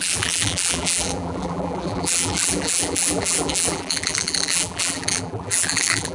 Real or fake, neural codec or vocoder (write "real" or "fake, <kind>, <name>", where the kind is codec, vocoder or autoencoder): fake, vocoder, BigVGAN v2